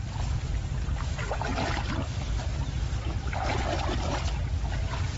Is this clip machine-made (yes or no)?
no